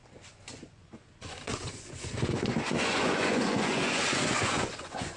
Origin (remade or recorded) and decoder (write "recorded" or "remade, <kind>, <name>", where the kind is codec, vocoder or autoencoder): remade, vocoder, Vocos